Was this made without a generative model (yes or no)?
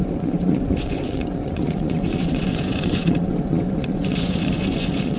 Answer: no